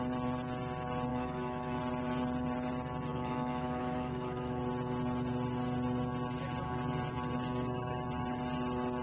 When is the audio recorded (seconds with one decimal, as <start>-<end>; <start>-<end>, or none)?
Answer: 0.0-1.1; 1.8-3.1; 4.6-9.0